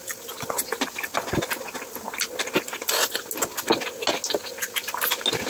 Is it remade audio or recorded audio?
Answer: recorded